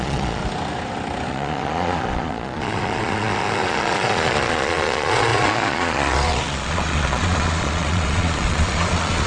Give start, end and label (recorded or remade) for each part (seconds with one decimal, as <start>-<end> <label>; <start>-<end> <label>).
0.0-0.4 remade; 0.4-1.3 recorded; 1.3-9.3 remade